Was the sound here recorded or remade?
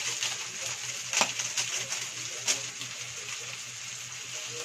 recorded